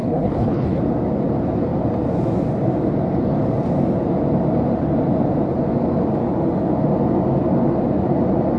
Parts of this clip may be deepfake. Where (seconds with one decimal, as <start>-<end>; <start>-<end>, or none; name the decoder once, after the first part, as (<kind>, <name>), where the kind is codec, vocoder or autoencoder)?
0.0-0.8 (codec, HILCodec)